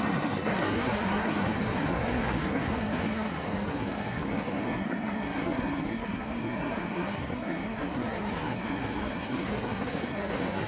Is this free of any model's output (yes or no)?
no